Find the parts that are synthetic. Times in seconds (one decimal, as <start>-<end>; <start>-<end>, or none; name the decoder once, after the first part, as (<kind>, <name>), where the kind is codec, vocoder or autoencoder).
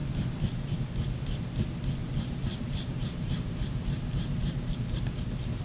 2.0-4.7 (vocoder, BigVGAN v2)